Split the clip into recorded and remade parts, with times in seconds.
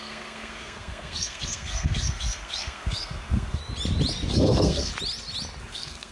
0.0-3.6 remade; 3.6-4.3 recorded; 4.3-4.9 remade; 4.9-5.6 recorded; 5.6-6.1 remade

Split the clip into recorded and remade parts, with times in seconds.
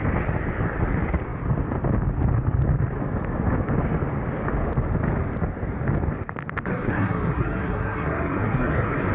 0.0-6.7 recorded; 6.7-9.1 remade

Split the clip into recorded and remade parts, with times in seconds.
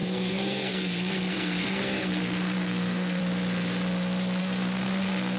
0.0-3.2 remade; 3.2-4.4 recorded; 4.4-5.4 remade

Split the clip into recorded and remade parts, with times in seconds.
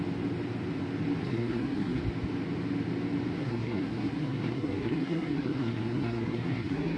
0.0-1.2 recorded; 1.2-2.0 remade; 2.0-3.4 recorded; 3.4-7.0 remade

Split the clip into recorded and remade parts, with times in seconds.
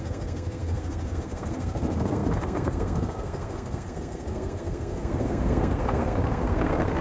0.0-7.0 remade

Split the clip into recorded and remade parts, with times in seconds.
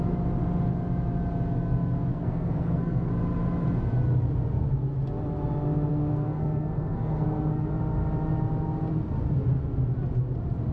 0.0-2.1 recorded; 2.1-3.1 remade; 3.1-5.9 recorded; 5.9-7.7 remade; 7.7-10.7 recorded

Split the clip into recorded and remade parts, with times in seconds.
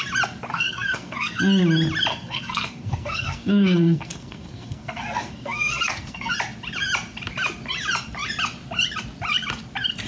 0.0-0.5 recorded; 0.5-1.4 remade; 1.4-2.1 recorded; 2.1-6.3 remade; 6.3-10.1 recorded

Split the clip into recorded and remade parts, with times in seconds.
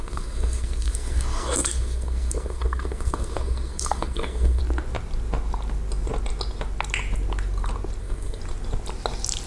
0.0-4.6 remade; 4.6-8.0 recorded; 8.0-8.4 remade; 8.4-9.5 recorded